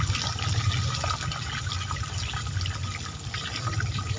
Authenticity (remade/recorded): recorded